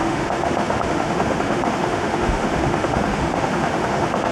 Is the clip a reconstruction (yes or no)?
yes